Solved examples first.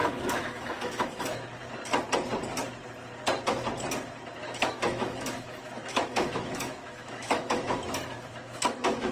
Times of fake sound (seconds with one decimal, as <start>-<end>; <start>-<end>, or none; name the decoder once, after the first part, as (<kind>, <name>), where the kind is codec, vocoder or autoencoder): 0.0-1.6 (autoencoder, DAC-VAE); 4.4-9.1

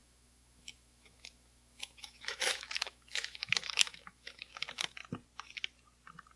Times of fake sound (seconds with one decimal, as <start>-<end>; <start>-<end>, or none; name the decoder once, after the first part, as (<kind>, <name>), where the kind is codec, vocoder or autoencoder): 0.0-5.0 (autoencoder, DAC-VAE)

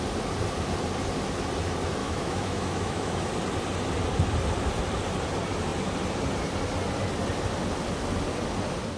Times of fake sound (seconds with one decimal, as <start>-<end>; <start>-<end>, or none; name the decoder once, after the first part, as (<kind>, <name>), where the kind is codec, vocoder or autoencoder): 2.0-3.3 (autoencoder, DAC-VAE)